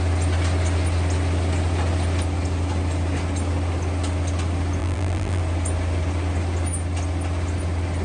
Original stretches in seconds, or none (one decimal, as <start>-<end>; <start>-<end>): 0.0-4.8; 5.4-8.0